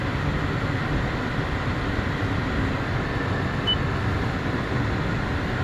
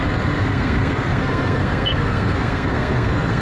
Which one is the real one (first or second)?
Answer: first